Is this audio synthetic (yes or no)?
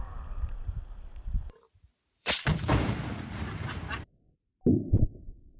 yes